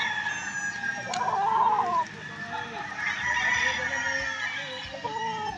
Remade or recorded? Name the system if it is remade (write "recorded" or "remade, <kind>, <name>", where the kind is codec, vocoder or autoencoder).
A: recorded